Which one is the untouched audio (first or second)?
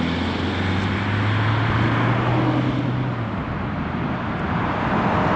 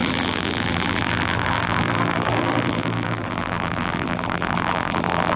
first